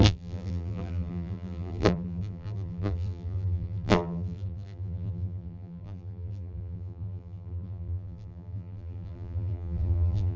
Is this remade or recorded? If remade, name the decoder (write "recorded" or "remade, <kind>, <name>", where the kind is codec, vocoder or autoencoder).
remade, vocoder, BigVGAN v2